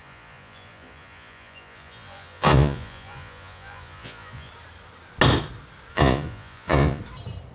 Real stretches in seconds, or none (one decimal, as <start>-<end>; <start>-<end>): 4.5-5.9; 7.0-7.5